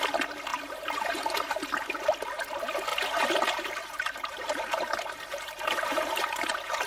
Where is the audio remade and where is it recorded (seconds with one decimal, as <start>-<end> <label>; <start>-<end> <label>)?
0.0-0.5 recorded; 0.5-1.7 remade; 1.7-2.9 recorded; 2.9-6.9 remade

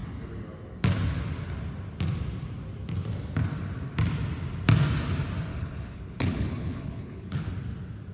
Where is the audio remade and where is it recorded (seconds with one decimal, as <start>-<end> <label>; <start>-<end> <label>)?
0.0-5.5 recorded; 5.5-7.5 remade; 7.5-8.1 recorded

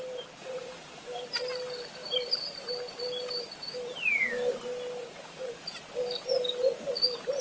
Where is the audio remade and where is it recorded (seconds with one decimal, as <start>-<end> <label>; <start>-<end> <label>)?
0.0-0.4 recorded; 0.4-0.9 remade; 0.9-5.0 recorded; 5.0-5.6 remade; 5.6-7.4 recorded

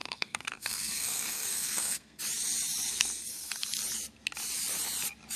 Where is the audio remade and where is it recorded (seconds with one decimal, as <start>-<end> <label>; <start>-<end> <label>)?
0.0-2.2 remade; 2.2-2.9 recorded; 2.9-3.5 remade; 3.5-5.4 recorded

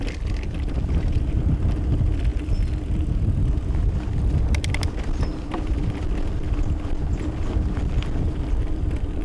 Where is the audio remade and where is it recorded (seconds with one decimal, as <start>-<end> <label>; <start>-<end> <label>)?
0.0-9.2 recorded